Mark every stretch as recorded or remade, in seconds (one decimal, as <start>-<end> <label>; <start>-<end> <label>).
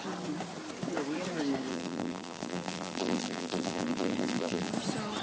0.0-1.7 recorded; 1.7-4.7 remade; 4.7-5.2 recorded